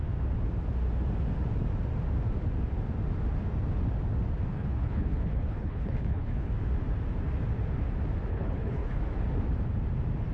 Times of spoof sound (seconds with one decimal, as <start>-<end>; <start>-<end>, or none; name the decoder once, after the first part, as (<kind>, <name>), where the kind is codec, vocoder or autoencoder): 4.5-6.5 (codec, HILCodec); 8.3-9.0